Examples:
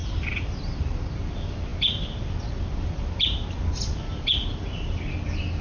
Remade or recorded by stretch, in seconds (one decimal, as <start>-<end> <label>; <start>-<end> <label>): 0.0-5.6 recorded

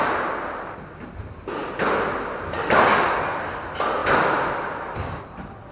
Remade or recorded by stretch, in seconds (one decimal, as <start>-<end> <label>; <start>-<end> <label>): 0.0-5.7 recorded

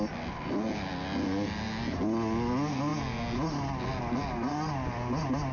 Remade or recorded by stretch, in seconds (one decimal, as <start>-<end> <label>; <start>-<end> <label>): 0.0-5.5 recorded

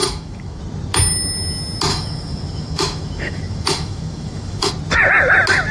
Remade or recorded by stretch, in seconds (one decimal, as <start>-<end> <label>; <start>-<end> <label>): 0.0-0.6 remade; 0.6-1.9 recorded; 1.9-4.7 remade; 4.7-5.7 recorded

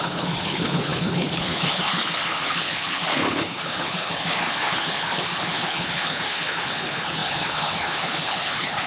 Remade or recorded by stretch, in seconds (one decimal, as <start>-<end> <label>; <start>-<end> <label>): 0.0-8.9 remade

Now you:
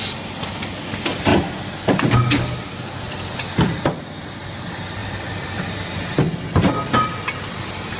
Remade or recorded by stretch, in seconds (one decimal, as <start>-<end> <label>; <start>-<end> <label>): 0.0-5.0 recorded; 5.0-6.7 remade; 6.7-8.0 recorded

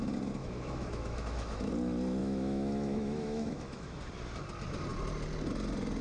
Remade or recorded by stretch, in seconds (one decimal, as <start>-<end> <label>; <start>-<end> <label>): 0.0-0.4 recorded; 0.4-1.7 remade; 1.7-2.2 recorded; 2.2-4.0 remade; 4.0-6.0 recorded